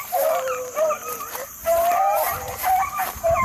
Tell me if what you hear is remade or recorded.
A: remade